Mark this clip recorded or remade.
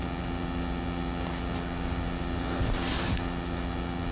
recorded